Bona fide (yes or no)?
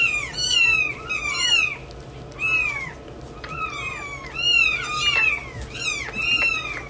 yes